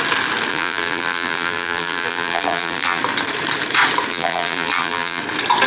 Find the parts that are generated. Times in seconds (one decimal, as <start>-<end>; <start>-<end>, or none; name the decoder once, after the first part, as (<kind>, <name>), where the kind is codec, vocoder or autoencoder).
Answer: 0.5-3.0 (vocoder, BigVGAN v2); 4.1-5.2